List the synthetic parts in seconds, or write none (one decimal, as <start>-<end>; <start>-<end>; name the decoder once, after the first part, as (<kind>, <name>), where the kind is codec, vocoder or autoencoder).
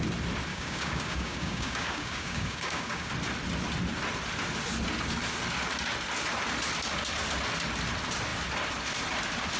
0.5-3.1 (codec, DAC)